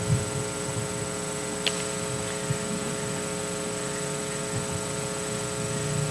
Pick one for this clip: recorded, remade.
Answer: recorded